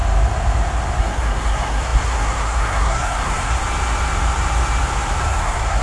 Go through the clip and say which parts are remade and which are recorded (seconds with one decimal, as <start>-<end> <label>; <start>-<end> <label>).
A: 0.0-1.0 recorded; 1.0-3.6 remade; 3.6-5.2 recorded; 5.2-5.8 remade